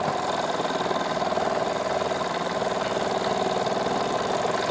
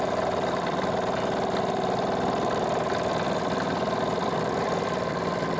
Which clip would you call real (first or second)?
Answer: first